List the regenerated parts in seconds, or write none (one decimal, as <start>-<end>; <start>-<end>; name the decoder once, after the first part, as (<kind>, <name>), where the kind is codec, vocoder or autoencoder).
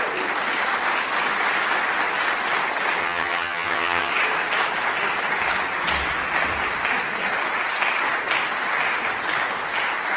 3.0-4.1 (vocoder, HiFi-GAN)